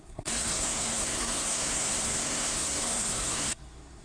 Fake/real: fake